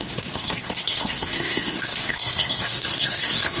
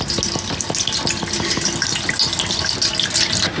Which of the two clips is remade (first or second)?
first